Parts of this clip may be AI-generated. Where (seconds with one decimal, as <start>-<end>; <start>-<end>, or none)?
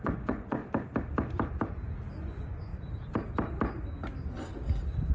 0.0-0.6; 2.2-2.7